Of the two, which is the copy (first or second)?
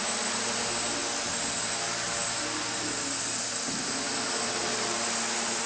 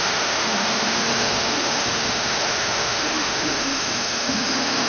second